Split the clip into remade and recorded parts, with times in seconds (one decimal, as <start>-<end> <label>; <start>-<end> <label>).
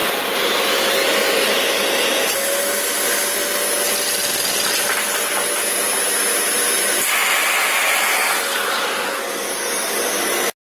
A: 0.0-8.5 recorded; 8.5-10.3 remade; 10.3-10.8 recorded